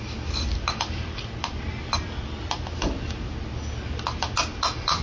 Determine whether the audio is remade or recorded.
recorded